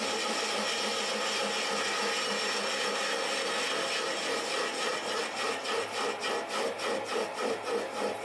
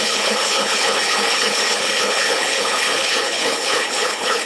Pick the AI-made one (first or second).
second